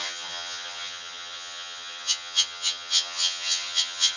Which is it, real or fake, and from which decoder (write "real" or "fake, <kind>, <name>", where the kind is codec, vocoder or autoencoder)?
fake, vocoder, HiFi-GAN